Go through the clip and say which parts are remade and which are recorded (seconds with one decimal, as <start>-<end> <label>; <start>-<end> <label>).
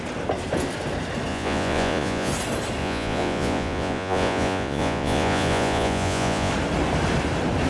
0.0-1.3 recorded; 1.3-2.3 remade; 2.3-2.8 recorded; 2.8-6.5 remade; 6.5-7.7 recorded